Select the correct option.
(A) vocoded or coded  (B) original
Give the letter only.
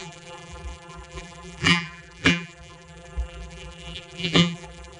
A